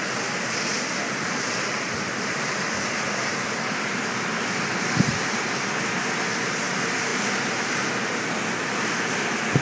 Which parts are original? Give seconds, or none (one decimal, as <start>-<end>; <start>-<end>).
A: 0.0-9.6